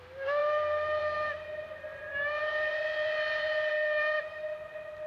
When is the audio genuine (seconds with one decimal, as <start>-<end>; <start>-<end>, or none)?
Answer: 0.0-1.9; 3.7-5.1